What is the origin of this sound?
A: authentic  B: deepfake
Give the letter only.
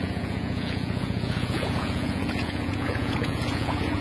B